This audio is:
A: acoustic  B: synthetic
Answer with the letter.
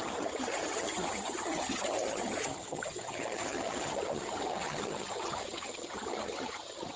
B